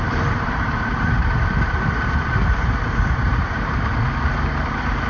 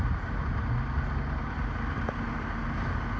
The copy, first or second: first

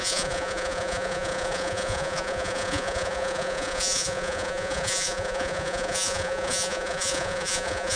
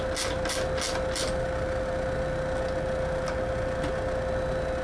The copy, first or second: first